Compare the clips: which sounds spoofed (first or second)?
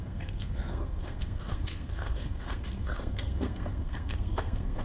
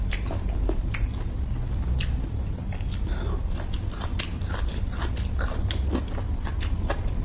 first